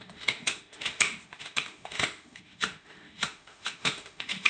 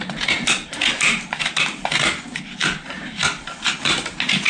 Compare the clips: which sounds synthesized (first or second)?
first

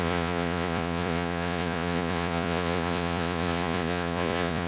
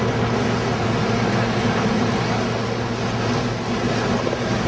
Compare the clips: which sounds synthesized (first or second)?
first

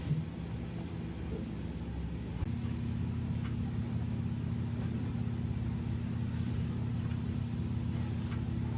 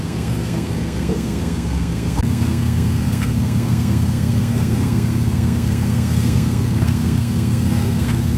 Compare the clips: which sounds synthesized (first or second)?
second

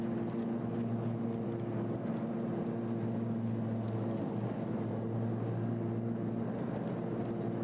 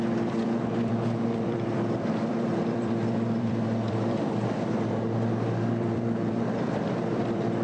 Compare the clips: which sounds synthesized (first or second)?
second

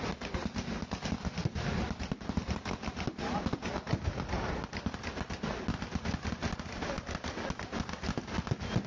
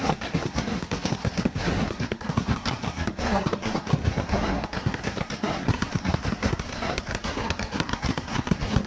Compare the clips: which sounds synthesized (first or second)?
second